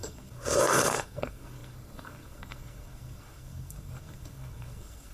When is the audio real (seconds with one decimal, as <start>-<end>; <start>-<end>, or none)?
none